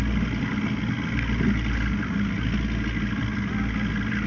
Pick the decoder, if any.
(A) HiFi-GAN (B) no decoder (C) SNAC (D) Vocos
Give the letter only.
B